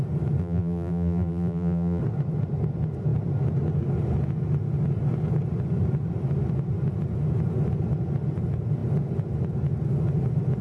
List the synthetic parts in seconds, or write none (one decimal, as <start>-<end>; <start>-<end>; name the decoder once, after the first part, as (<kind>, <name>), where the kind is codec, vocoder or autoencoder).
0.4-2.0 (vocoder, BigVGAN v2)